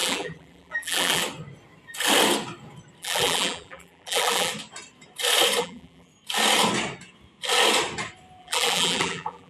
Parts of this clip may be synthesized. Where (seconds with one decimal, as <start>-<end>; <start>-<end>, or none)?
0.0-1.2; 3.0-4.5; 5.6-6.1; 8.4-9.5